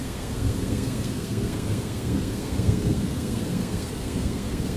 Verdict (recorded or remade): remade